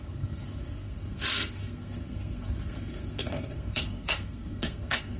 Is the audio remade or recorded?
remade